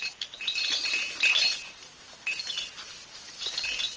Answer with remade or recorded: recorded